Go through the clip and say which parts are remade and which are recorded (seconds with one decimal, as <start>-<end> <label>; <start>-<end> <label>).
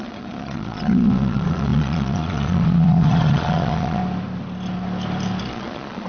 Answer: 0.0-4.0 remade; 4.0-5.5 recorded; 5.5-6.1 remade